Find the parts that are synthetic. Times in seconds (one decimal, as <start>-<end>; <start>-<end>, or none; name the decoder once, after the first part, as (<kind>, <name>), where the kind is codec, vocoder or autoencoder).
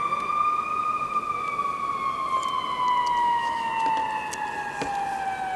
3.2-3.7 (autoencoder, DAC-VAE)